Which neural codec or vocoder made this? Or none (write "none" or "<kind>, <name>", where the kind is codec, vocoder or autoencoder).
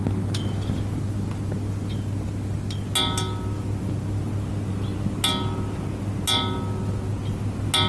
none